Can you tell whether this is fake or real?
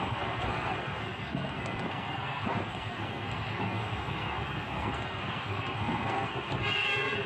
fake